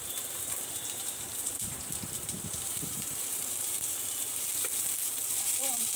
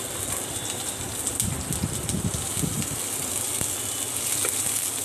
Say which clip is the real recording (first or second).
second